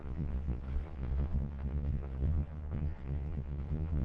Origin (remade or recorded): remade